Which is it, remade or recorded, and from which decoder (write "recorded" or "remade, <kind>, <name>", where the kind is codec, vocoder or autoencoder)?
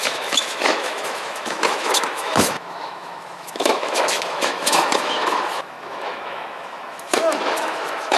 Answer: remade, autoencoder, DAC-VAE